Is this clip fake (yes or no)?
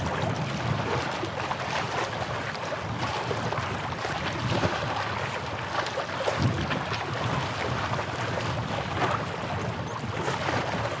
no